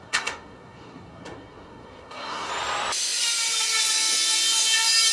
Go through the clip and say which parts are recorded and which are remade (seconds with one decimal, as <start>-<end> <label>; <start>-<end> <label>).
0.0-2.5 remade; 2.5-5.1 recorded